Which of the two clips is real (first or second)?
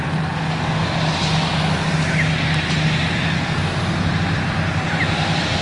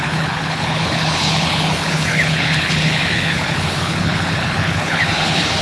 first